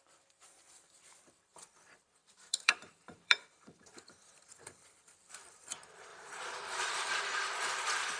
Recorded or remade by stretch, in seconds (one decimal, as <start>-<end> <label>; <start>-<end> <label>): 0.0-2.2 recorded; 2.2-4.0 remade; 4.0-6.1 recorded; 6.1-7.2 remade; 7.2-8.2 recorded